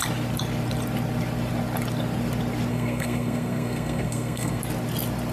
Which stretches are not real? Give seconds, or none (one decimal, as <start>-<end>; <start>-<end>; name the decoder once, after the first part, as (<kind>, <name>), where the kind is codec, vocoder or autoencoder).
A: 2.7-4.6 (codec, SNAC)